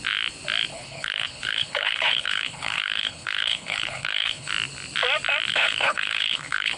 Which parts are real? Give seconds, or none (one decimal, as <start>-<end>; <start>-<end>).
0.0-0.7; 4.5-5.5